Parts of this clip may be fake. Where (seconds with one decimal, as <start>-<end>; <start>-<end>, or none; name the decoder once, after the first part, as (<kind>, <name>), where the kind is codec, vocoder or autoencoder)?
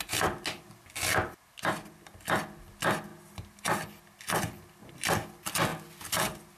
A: none